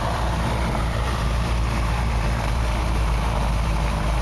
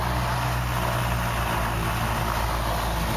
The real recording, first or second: second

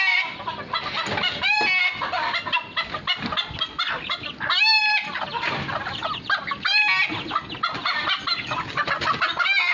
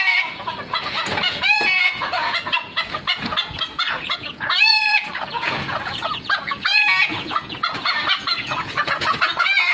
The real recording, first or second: first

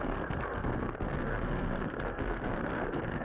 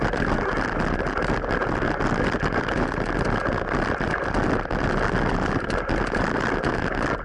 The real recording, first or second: second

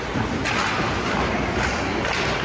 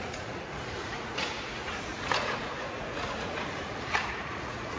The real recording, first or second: first